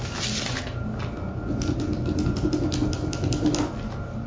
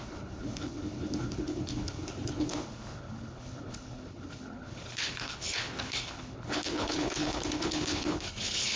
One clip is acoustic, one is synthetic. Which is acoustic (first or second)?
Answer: first